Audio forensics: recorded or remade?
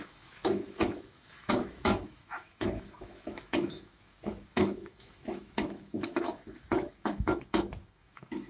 remade